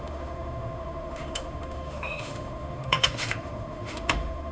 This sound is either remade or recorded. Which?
remade